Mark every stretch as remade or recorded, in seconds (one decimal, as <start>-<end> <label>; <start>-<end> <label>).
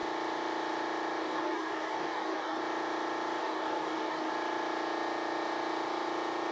0.0-1.2 recorded; 1.2-2.6 remade; 2.6-3.4 recorded; 3.4-4.3 remade; 4.3-6.5 recorded